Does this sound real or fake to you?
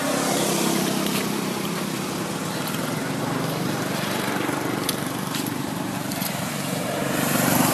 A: fake